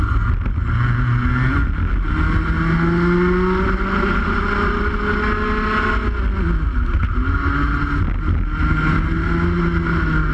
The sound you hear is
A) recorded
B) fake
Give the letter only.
A